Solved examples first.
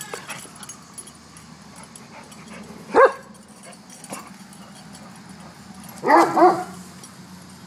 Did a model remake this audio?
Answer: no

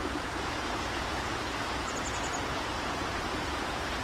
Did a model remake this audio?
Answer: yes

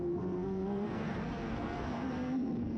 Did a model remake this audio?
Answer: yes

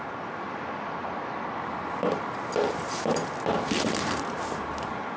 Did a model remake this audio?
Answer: no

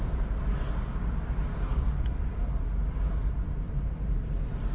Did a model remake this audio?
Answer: no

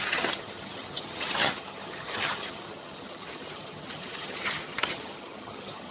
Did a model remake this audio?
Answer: yes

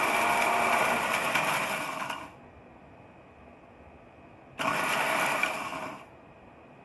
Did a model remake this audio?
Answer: no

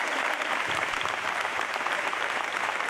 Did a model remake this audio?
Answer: yes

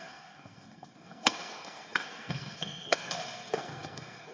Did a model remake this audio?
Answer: yes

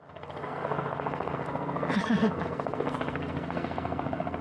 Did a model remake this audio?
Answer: yes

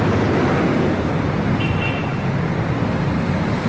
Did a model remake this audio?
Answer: no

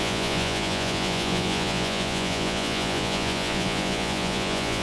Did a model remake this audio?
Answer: yes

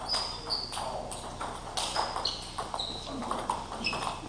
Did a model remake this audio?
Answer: no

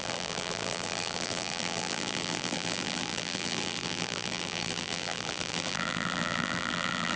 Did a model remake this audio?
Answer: yes